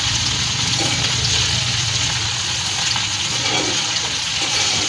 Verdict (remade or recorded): remade